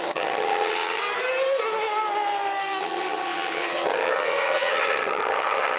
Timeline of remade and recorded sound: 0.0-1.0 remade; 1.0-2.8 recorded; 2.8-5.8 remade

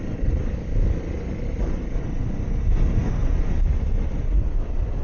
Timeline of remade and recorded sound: 0.0-5.0 recorded

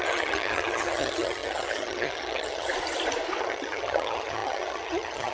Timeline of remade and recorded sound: 0.0-2.7 remade; 2.7-3.4 recorded; 3.4-5.3 remade

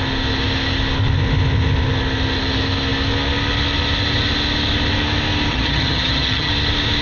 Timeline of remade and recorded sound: 0.0-5.5 recorded; 5.5-6.5 remade; 6.5-7.0 recorded

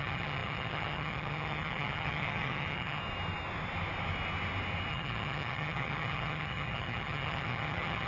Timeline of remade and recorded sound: 0.0-3.0 remade; 3.0-4.9 recorded; 4.9-8.1 remade